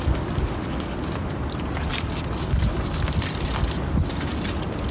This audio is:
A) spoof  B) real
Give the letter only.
B